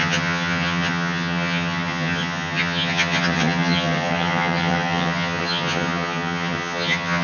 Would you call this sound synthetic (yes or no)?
yes